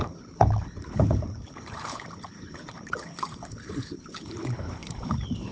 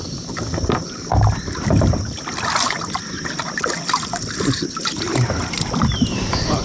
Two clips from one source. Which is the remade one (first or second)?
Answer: first